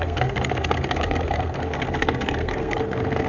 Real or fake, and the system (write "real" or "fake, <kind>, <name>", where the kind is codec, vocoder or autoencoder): fake, codec, SNAC